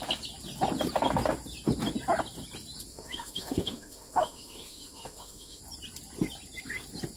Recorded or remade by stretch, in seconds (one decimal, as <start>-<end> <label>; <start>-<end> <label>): 0.0-2.9 recorded; 2.9-5.6 remade; 5.6-7.2 recorded